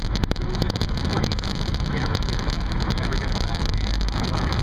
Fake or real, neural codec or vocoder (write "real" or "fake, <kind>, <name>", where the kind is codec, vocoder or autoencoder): fake, autoencoder, DAC-VAE